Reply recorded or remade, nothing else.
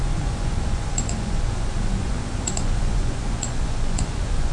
remade